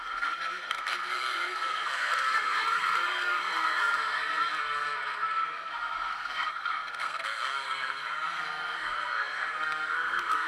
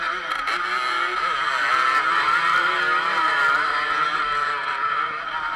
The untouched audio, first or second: second